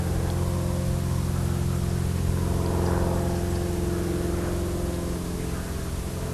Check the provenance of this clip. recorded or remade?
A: recorded